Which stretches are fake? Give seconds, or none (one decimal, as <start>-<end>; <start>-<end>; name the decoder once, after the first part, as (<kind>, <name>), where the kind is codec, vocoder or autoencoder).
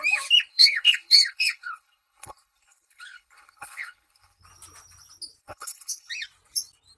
0.5-4.4 (codec, HILCodec); 5.4-6.1